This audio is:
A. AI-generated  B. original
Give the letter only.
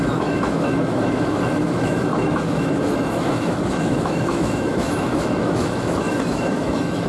A